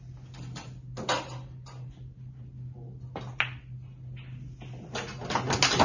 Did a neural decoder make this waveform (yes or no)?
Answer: no